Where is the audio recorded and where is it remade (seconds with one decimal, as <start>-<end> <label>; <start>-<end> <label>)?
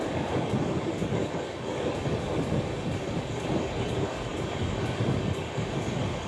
0.0-6.3 remade